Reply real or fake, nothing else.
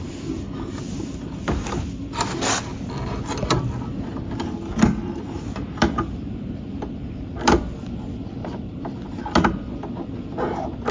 real